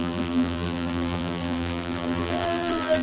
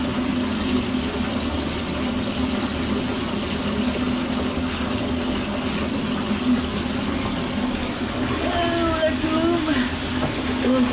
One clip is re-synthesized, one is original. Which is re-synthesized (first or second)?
first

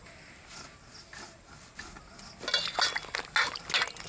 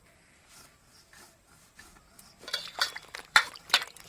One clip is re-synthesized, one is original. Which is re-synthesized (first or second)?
second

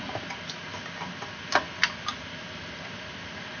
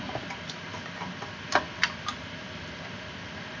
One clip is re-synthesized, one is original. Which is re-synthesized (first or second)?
second